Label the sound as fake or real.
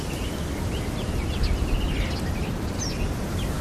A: real